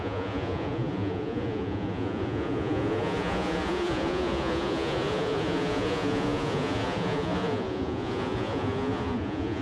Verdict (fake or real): fake